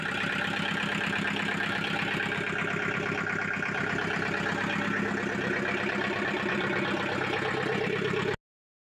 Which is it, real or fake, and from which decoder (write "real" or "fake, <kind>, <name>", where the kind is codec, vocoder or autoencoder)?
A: real